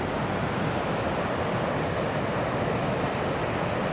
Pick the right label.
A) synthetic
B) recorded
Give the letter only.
B